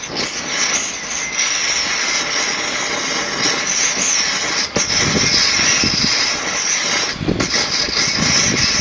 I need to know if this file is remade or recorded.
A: recorded